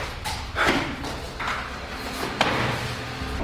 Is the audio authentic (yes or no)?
yes